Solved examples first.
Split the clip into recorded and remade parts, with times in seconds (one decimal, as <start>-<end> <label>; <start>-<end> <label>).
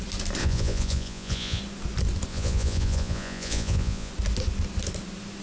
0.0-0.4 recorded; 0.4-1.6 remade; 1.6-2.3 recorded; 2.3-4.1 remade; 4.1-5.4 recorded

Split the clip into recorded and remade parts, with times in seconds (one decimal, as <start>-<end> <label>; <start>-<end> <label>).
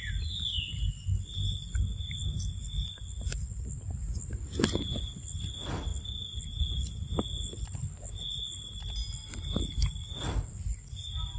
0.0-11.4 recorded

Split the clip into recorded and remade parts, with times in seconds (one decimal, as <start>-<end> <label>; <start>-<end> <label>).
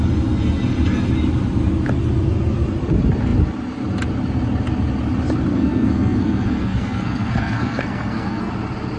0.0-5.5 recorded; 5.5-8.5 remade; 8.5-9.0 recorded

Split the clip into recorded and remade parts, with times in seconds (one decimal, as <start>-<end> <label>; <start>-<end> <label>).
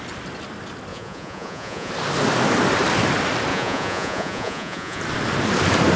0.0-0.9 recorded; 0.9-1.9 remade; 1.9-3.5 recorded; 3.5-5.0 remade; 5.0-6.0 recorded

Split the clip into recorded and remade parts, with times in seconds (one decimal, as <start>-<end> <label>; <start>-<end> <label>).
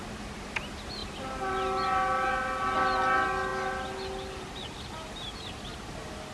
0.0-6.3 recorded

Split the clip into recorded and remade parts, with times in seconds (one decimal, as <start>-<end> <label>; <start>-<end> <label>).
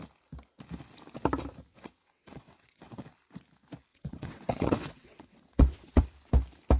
0.0-1.7 recorded; 1.7-3.0 remade; 3.0-3.9 recorded; 3.9-6.0 remade; 6.0-6.8 recorded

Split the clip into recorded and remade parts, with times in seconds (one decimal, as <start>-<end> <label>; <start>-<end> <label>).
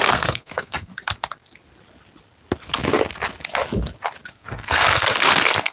0.0-0.9 remade; 0.9-4.3 recorded; 4.3-5.7 remade